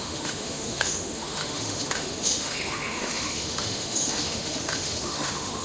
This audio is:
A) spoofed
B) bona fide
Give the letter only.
A